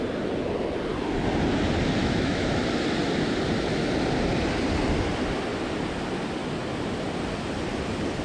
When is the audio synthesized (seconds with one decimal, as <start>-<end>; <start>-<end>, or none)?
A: 2.0-2.6